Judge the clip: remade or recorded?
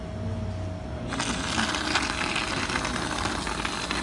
recorded